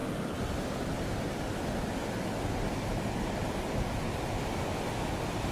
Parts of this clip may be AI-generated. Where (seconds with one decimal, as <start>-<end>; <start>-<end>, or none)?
none